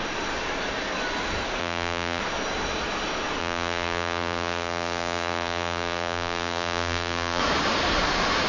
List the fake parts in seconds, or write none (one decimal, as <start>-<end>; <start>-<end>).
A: 1.6-2.2; 3.4-7.4